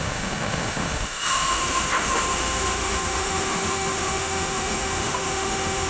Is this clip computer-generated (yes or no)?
yes